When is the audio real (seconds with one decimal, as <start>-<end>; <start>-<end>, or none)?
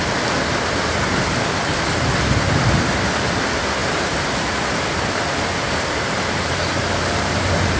0.0-3.8; 6.8-7.8